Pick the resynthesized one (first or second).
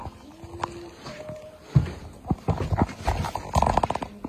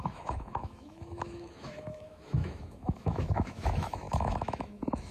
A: second